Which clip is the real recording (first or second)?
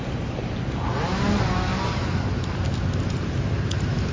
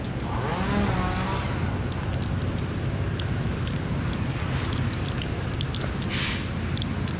second